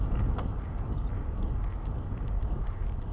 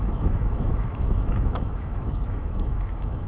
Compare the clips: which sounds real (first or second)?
first